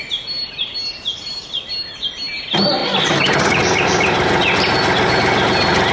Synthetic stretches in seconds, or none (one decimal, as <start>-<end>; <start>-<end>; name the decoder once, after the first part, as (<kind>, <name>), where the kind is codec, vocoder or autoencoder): none